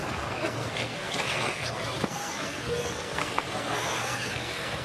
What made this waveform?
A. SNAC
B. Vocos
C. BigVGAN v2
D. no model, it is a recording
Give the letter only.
A